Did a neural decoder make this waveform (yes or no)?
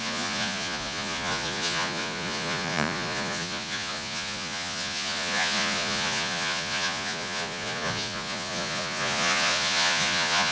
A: yes